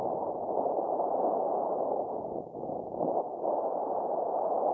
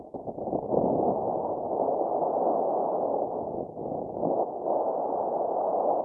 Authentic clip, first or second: second